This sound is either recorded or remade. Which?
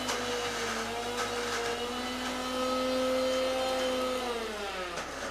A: recorded